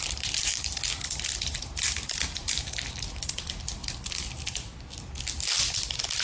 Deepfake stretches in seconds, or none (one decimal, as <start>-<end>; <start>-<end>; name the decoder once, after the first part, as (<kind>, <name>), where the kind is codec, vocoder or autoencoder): 0.0-4.7 (vocoder, BigVGAN v2)